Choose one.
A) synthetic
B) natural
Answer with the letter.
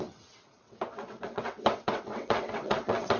A